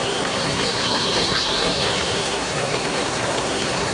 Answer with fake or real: fake